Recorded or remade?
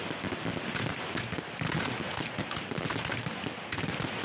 recorded